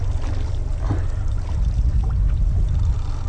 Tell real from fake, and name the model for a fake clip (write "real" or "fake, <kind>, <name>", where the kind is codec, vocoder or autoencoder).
real